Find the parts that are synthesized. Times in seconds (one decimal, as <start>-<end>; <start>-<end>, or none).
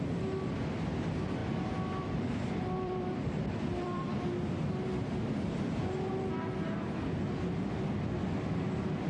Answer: 1.4-4.1